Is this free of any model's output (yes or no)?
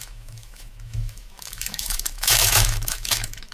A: no